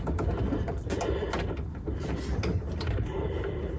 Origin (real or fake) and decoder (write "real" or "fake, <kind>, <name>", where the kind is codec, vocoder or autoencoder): real